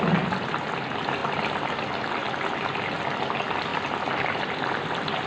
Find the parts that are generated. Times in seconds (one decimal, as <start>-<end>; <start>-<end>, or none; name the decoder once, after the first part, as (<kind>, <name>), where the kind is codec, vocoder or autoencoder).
3.7-5.3 (vocoder, BigVGAN v2)